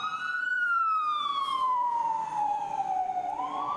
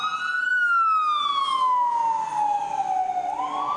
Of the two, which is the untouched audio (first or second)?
second